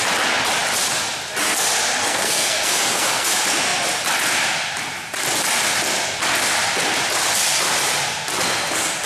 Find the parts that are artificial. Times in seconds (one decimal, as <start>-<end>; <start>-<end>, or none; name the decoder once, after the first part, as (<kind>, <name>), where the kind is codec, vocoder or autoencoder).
2.0-3.3 (codec, SNAC)